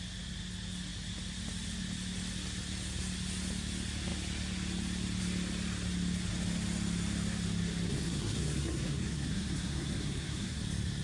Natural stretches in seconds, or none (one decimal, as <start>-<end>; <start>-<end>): 0.0-7.9; 10.6-11.0